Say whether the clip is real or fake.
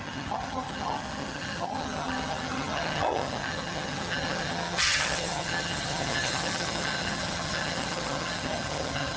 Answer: fake